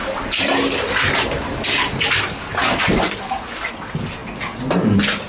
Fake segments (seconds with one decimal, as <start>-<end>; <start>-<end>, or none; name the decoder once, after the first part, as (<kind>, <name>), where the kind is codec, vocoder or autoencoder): none